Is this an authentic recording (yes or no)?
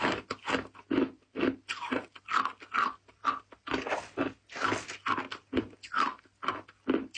yes